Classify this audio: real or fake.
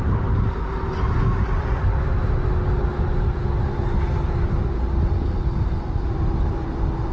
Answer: real